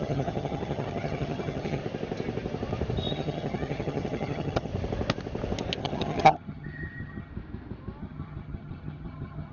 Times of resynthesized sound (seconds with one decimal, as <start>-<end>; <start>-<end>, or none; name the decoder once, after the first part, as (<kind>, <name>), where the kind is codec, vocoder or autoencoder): 0.0-1.8 (vocoder, HiFi-GAN); 3.1-4.7; 5.8-7.3; 8.0-9.5

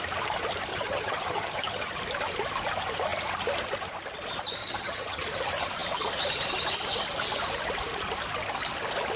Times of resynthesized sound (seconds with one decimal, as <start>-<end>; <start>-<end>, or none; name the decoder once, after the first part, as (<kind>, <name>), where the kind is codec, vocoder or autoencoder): 0.7-2.0 (vocoder, HiFi-GAN); 4.6-5.2

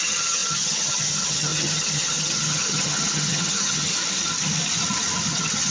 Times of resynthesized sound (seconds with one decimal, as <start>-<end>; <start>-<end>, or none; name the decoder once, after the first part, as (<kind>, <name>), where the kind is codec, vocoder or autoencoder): 0.0-3.9 (vocoder, HiFi-GAN); 5.3-5.7

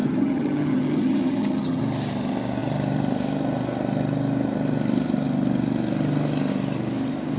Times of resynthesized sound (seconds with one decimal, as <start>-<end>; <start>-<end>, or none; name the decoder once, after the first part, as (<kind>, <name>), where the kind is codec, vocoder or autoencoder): 0.0-1.8 (vocoder, HiFi-GAN)

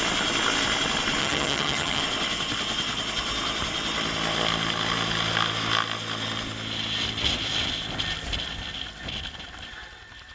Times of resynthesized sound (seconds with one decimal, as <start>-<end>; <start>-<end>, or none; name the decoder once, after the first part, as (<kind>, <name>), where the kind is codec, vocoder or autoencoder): 1.2-2.0 (vocoder, HiFi-GAN)

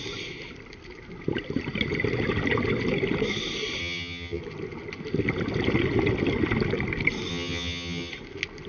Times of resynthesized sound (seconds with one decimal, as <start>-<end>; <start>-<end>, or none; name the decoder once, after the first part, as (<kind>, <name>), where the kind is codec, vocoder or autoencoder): 3.8-4.4 (vocoder, HiFi-GAN); 7.3-8.1

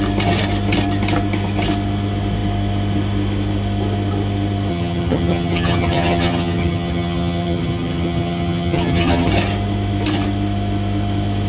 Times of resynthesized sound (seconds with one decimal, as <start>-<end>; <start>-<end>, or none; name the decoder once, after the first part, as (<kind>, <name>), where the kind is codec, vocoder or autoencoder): 4.7-9.3 (vocoder, HiFi-GAN)